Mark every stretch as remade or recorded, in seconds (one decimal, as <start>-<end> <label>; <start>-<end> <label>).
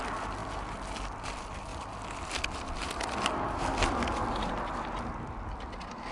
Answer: 0.0-6.1 recorded